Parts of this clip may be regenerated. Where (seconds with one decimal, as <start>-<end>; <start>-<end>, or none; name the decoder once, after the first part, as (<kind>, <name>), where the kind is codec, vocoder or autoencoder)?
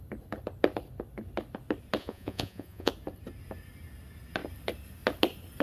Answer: 2.0-2.9 (vocoder, Vocos)